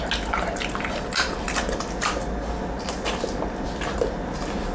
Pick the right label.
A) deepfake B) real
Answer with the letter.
B